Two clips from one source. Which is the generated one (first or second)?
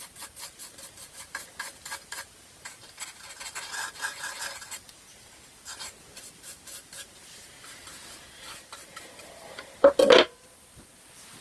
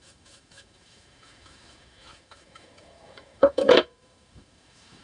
second